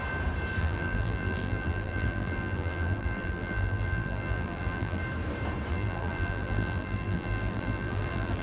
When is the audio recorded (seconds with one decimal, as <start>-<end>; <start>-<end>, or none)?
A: 0.0-0.6; 5.0-5.7